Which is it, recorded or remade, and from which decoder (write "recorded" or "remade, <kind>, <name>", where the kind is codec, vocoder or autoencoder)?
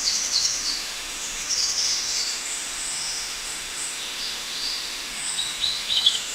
remade, autoencoder, DAC-VAE